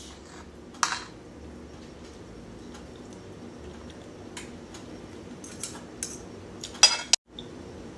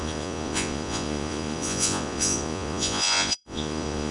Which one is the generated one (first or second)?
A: second